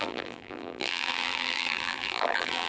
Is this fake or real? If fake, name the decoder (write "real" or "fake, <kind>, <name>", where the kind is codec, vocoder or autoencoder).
fake, vocoder, BigVGAN v2